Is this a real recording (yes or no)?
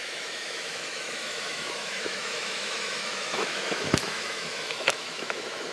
no